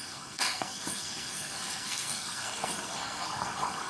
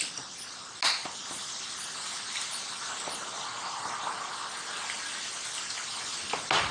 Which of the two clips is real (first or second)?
second